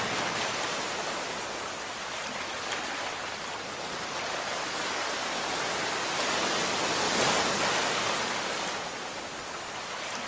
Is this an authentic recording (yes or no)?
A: yes